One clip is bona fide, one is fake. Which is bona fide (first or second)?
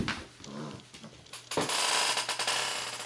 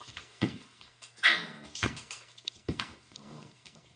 first